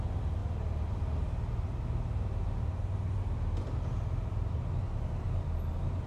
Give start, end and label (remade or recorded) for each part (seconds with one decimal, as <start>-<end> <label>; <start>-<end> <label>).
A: 0.0-6.1 recorded